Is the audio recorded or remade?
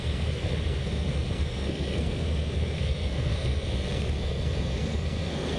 remade